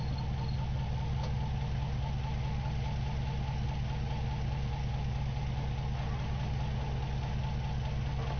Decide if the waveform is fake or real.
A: real